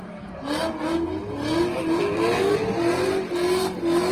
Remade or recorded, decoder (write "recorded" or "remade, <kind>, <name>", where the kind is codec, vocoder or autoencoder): recorded